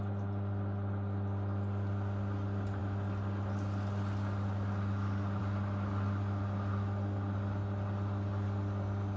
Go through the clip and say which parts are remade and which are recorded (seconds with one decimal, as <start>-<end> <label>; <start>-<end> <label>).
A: 0.0-9.2 recorded